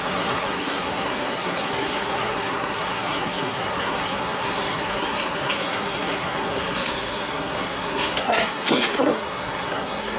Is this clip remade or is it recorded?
remade